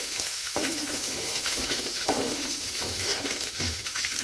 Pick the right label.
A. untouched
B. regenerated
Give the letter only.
B